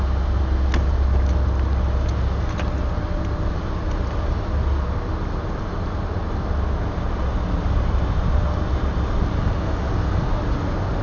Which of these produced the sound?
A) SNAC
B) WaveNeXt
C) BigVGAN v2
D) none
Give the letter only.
D